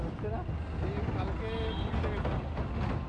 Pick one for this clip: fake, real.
real